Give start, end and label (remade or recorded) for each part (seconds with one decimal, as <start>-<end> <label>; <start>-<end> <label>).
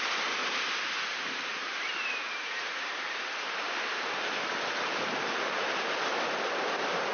0.0-0.4 recorded; 0.4-1.0 remade; 1.0-1.5 recorded; 1.5-5.8 remade; 5.8-7.1 recorded